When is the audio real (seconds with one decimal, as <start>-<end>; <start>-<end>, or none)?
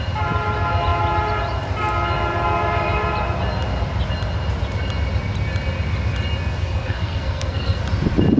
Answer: 0.0-6.6; 7.8-8.4